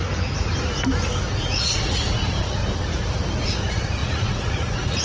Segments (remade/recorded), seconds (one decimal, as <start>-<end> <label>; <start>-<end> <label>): 0.0-1.3 recorded; 1.3-2.6 remade; 2.6-3.4 recorded; 3.4-5.0 remade